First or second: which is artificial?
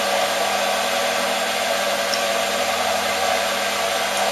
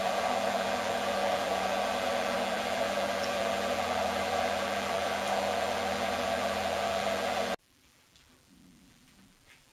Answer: second